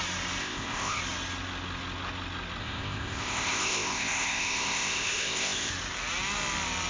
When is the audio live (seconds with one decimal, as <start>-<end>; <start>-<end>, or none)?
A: 0.0-0.4; 1.0-2.6; 5.7-6.9